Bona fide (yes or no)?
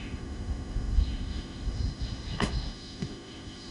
no